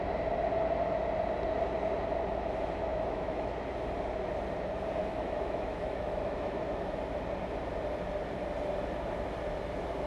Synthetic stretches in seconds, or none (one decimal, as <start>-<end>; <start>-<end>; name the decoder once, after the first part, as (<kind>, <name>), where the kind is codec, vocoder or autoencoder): 2.9-3.5 (autoencoder, DAC-VAE); 5.0-6.6